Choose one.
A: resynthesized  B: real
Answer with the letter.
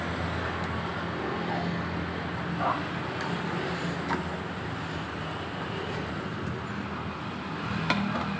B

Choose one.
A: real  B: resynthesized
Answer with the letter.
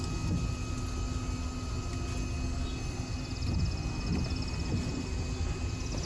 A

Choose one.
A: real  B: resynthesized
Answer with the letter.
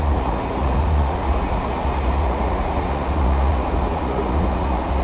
B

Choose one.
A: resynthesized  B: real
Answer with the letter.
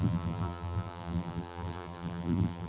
A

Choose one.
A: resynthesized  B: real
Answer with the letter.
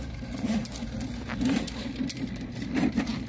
B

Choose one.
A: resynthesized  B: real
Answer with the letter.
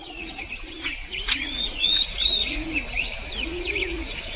A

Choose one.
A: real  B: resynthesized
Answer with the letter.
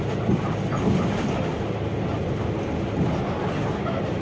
A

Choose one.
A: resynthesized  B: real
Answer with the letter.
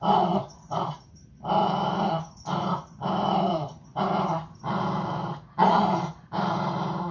A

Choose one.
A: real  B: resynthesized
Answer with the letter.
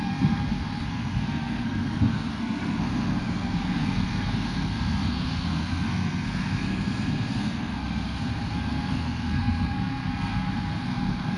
B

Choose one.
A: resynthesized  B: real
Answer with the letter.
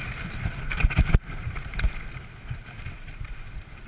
B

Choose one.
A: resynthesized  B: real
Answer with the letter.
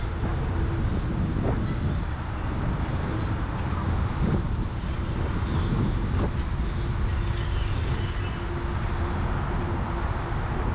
B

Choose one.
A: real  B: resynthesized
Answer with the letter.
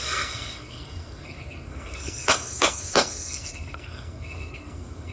B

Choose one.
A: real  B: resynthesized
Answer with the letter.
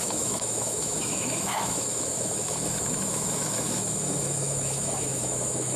B